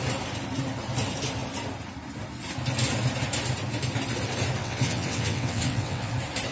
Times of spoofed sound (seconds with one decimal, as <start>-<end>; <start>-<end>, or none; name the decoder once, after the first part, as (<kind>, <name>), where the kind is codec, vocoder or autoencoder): 4.6-6.1 (vocoder, WaveNeXt)